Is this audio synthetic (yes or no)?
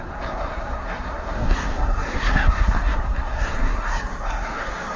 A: yes